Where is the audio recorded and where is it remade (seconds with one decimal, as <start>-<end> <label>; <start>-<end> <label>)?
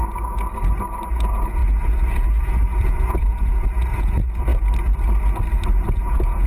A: 0.0-1.1 recorded; 1.1-4.5 remade; 4.5-5.7 recorded; 5.7-6.5 remade